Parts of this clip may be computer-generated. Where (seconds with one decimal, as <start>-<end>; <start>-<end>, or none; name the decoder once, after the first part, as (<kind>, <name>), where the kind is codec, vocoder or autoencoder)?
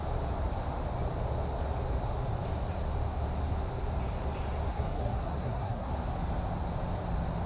4.7-5.9 (codec, SNAC)